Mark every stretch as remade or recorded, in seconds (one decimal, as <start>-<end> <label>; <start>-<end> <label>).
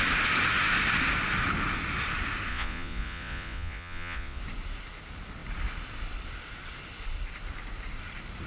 0.0-2.5 recorded; 2.5-4.4 remade; 4.4-8.5 recorded